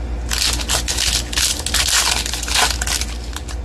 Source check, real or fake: real